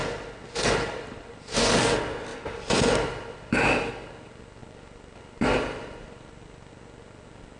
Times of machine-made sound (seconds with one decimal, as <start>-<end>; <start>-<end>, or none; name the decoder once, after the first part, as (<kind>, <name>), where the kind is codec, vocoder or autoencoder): 2.3-3.9 (vocoder, BigVGAN v2); 4.6-6.7